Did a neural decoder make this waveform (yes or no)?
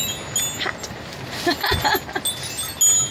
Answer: no